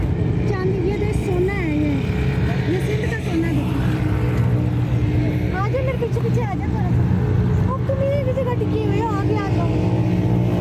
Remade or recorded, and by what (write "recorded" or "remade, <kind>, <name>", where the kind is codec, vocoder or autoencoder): recorded